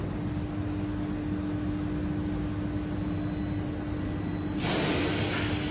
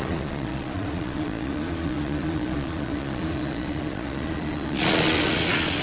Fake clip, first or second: second